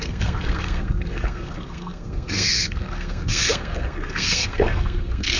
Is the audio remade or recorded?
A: remade